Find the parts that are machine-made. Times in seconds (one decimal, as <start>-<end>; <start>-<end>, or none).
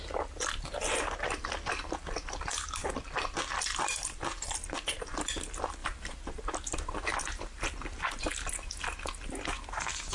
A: 5.8-8.2